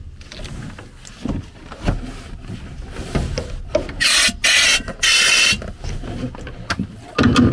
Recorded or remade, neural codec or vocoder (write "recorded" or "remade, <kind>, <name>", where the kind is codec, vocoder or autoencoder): recorded